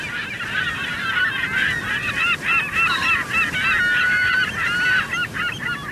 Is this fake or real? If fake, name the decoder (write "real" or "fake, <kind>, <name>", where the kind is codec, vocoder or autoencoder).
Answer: real